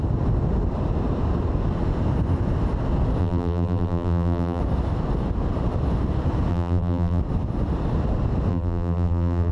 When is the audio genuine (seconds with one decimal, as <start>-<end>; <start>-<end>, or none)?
0.0-3.2; 4.6-6.5; 7.2-8.5

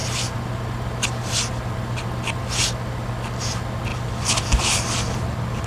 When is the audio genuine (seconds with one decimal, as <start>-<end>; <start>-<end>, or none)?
0.0-5.7

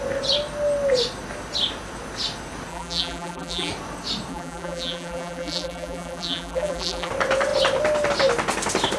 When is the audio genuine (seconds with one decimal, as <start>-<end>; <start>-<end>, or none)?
0.0-2.7; 3.7-4.3; 7.1-9.0

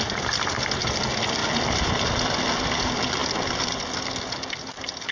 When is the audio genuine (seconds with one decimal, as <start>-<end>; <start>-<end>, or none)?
0.0-5.1